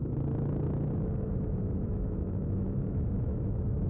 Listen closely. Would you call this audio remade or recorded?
remade